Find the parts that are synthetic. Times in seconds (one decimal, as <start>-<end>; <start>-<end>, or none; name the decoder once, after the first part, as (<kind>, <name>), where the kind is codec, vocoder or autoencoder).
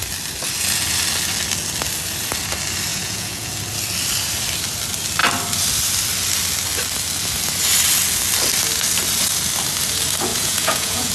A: 2.9-3.5 (vocoder, Vocos); 10.3-11.1